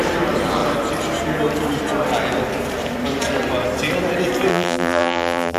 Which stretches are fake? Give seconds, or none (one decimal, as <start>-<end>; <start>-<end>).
4.5-5.6